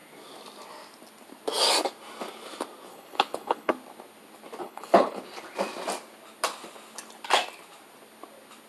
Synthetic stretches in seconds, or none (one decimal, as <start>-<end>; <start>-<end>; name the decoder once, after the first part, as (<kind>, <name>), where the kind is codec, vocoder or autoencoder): 2.9-3.7 (codec, HILCodec); 4.6-5.2